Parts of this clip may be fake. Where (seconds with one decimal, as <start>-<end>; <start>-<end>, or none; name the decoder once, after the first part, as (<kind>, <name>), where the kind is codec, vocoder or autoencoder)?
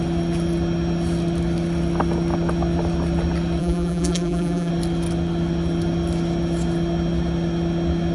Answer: 3.6-4.7 (vocoder, BigVGAN v2)